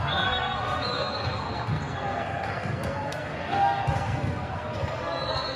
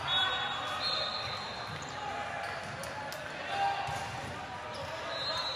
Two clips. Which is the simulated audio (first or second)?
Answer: first